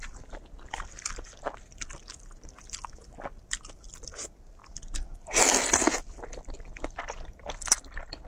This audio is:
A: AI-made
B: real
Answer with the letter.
B